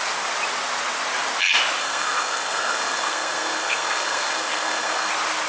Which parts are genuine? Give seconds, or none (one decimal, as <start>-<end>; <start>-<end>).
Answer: 0.0-1.8; 5.1-5.5